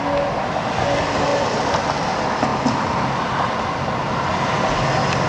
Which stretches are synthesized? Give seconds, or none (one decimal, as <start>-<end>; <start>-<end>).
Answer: none